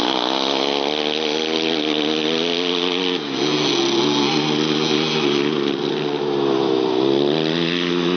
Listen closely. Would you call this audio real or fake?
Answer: real